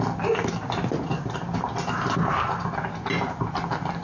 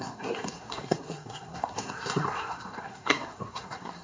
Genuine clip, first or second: first